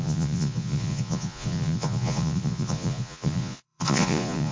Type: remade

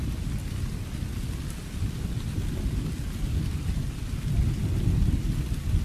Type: recorded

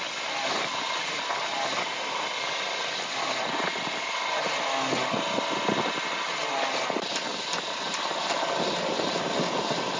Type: recorded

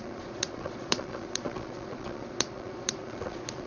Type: remade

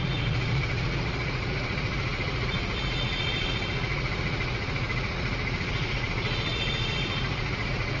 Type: remade